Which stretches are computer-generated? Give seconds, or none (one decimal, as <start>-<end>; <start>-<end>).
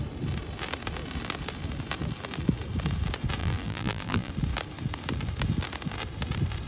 3.4-4.3